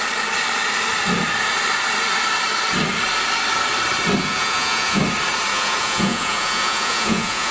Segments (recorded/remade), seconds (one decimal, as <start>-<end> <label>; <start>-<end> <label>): 0.0-4.2 recorded; 4.2-5.0 remade; 5.0-5.5 recorded; 5.5-7.5 remade